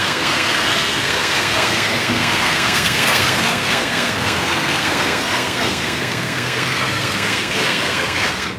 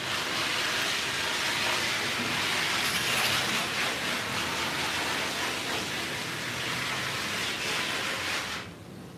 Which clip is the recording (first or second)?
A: second